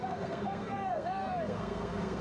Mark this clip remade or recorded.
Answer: remade